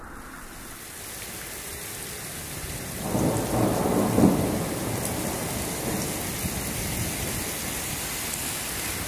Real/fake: real